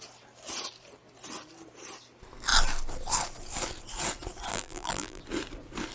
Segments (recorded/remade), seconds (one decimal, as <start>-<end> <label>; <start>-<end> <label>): 0.0-4.5 recorded; 4.5-5.2 remade; 5.2-5.9 recorded